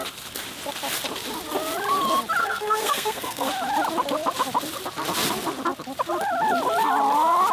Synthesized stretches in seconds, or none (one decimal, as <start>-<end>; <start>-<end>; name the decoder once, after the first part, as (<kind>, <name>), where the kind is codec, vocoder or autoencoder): 2.4-3.5 (codec, SNAC)